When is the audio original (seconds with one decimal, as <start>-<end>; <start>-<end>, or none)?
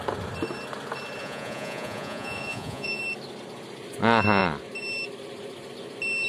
0.0-1.2; 3.0-6.3